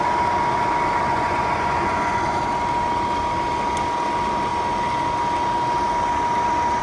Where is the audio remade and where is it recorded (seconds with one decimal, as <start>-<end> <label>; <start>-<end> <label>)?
0.0-1.1 recorded; 1.1-2.4 remade; 2.4-6.8 recorded